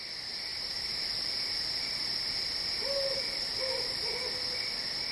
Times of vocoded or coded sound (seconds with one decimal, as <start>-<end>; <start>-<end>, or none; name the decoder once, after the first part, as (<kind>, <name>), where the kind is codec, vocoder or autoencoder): none